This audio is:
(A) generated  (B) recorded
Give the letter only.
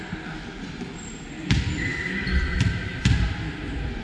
B